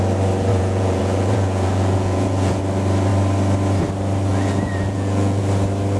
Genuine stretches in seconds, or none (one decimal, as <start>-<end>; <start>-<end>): 0.0-0.5; 2.6-4.3; 5.4-6.0

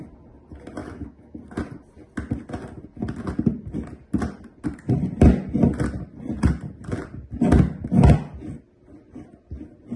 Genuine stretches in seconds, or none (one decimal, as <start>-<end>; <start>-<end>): 0.0-0.8; 1.4-10.0

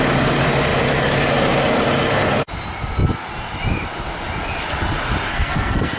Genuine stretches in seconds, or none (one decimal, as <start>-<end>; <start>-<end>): 0.0-5.3